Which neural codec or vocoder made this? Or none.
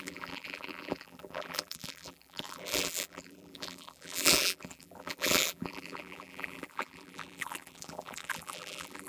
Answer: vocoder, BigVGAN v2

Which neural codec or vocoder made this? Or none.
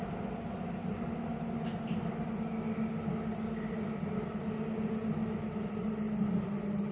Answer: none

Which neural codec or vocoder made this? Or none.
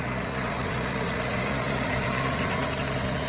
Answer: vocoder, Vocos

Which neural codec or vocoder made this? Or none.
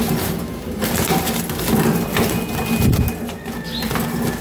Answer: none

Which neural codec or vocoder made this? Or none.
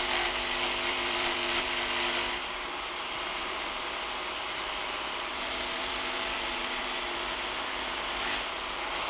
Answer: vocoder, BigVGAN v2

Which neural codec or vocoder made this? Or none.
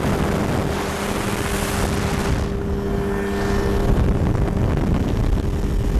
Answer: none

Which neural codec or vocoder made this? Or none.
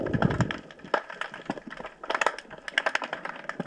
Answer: none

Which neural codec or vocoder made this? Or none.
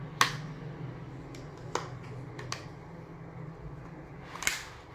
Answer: none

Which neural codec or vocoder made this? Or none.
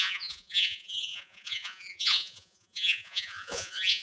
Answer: vocoder, Vocos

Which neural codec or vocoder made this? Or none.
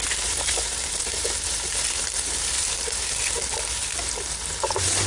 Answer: vocoder, BigVGAN v2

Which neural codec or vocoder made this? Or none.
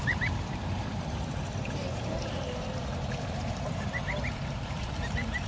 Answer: vocoder, BigVGAN v2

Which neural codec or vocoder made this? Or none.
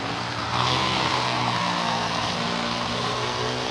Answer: codec, SNAC